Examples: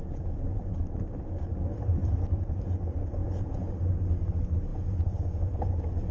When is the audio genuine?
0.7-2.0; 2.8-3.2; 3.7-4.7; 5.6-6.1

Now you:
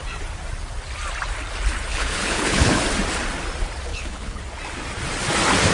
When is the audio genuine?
0.0-1.9; 2.8-3.9; 4.4-5.7

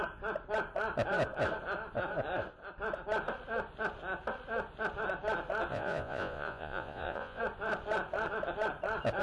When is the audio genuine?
0.0-5.7; 7.4-9.2